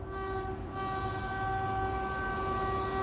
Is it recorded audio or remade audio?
recorded